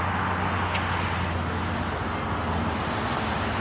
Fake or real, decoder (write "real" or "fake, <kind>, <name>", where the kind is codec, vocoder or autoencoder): real